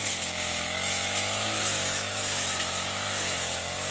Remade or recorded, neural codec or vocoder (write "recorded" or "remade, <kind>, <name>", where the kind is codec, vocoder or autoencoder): remade, autoencoder, DAC-VAE